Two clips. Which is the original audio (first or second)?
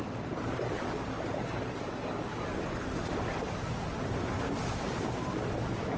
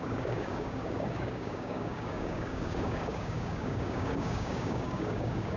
first